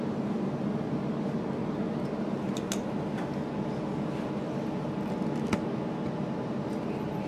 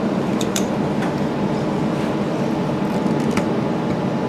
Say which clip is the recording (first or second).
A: first